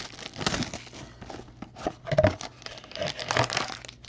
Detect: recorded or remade recorded